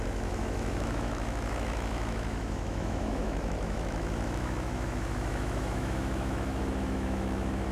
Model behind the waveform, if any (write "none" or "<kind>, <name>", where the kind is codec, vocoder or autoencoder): autoencoder, DAC-VAE